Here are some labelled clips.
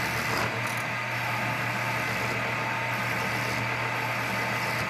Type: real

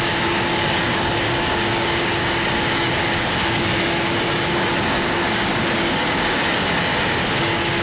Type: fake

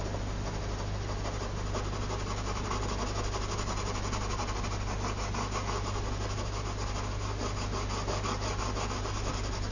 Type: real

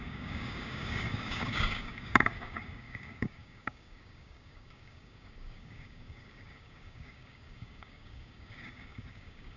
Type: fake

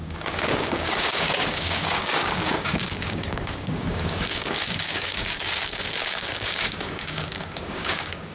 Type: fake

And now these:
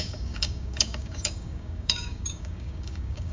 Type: fake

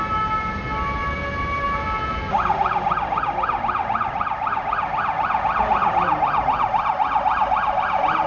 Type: real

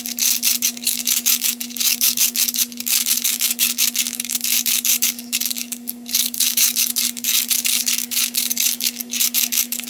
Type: fake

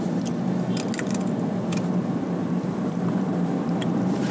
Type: real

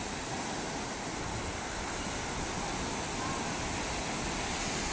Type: real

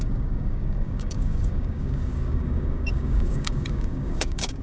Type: fake